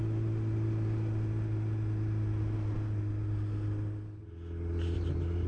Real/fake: real